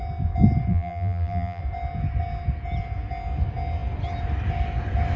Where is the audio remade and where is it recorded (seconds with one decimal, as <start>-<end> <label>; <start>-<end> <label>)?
0.0-0.7 recorded; 0.7-1.6 remade; 1.6-5.2 recorded